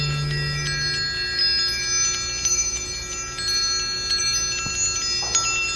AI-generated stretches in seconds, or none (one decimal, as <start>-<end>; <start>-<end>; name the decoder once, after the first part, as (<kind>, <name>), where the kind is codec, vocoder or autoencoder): none